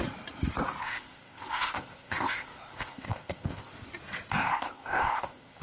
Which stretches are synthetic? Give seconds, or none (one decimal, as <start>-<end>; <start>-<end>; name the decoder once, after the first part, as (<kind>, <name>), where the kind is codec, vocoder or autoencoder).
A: 0.8-3.7 (codec, ZipCodec); 4.4-5.6